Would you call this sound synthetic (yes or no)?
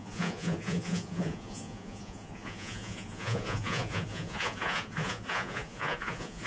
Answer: yes